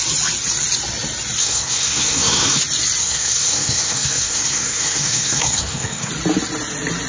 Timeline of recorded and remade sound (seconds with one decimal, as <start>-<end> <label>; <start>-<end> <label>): 0.0-1.4 recorded; 1.4-2.6 remade; 2.6-3.0 recorded; 3.0-6.1 remade; 6.1-7.1 recorded